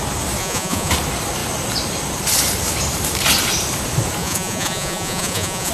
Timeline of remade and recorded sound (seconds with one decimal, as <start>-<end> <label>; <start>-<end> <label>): 0.0-0.4 recorded; 0.4-0.9 remade; 0.9-4.2 recorded; 4.2-5.7 remade